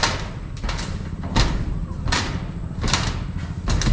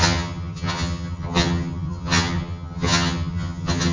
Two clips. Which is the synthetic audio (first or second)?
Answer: second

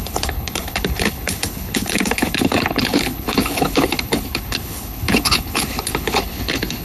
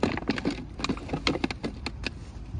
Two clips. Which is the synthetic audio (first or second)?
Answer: first